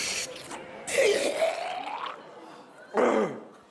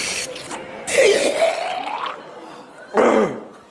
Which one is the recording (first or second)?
first